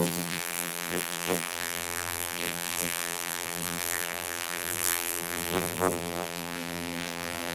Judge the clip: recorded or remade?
remade